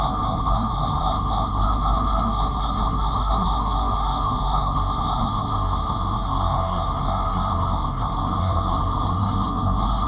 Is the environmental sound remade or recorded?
remade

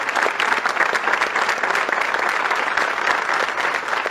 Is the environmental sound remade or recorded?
recorded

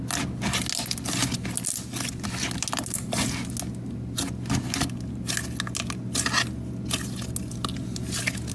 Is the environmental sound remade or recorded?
recorded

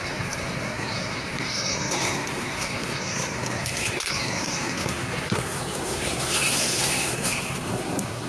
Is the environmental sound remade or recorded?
remade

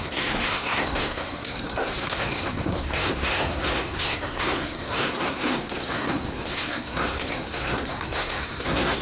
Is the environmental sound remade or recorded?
remade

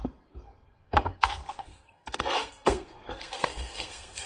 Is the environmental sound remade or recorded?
remade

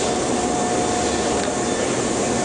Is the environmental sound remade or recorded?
recorded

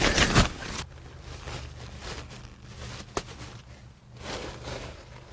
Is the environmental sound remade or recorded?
recorded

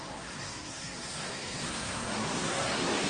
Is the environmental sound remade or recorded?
remade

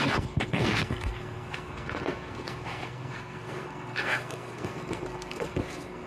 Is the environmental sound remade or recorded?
remade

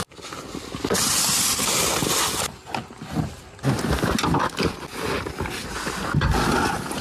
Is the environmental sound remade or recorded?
recorded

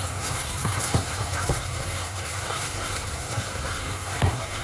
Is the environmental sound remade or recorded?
remade